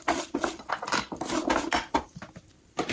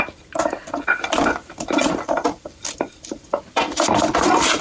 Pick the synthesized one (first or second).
second